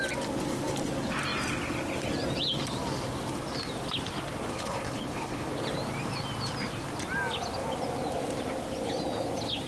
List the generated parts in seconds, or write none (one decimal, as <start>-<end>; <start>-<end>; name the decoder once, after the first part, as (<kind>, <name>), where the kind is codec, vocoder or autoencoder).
4.5-5.5 (codec, HILCodec)